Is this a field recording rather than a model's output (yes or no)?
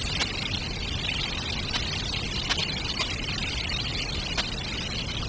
yes